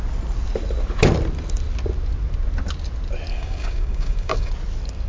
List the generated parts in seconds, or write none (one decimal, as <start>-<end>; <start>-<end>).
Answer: 3.3-4.5